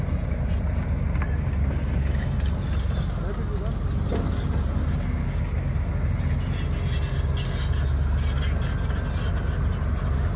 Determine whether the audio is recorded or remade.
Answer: recorded